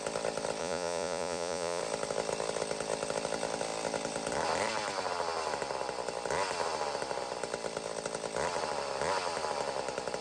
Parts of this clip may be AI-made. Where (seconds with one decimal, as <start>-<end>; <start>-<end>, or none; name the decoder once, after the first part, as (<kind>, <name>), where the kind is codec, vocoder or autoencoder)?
0.6-1.8 (vocoder, Vocos)